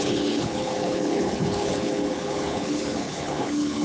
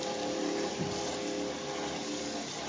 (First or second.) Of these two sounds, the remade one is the first